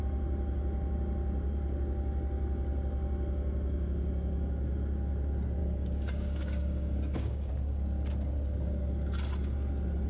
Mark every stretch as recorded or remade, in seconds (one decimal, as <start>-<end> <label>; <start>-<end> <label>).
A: 0.0-5.6 recorded; 5.6-7.5 remade; 7.5-10.1 recorded